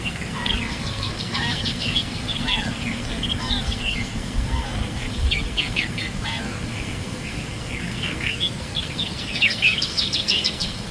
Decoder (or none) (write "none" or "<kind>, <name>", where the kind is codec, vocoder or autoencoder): codec, SNAC